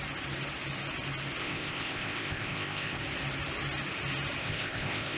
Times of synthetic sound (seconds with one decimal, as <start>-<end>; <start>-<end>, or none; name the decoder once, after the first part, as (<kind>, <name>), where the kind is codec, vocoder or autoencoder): 1.4-3.0 (codec, ZipCodec); 4.4-5.2